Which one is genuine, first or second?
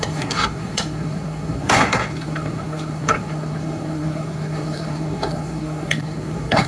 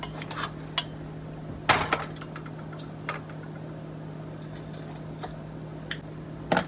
second